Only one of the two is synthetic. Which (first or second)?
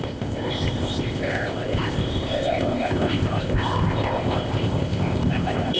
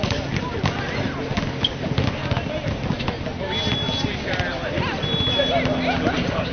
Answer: first